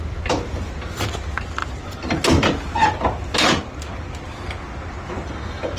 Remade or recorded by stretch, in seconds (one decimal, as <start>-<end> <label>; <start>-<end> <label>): 0.0-5.8 recorded